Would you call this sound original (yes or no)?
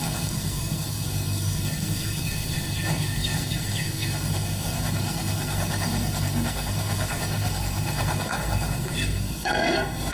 no